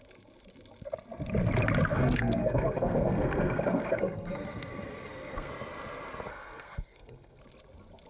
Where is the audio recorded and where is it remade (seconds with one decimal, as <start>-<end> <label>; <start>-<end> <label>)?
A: 0.0-1.9 recorded; 1.9-5.5 remade; 5.5-6.3 recorded; 6.3-7.4 remade; 7.4-8.1 recorded